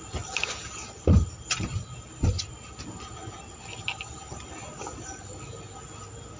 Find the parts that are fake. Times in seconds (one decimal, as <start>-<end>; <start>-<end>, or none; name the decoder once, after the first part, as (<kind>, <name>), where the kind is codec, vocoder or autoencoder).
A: none